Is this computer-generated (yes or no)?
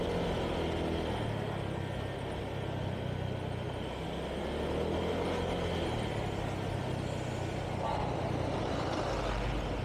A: no